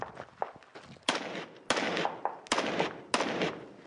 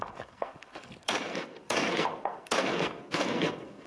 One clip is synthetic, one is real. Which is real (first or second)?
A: first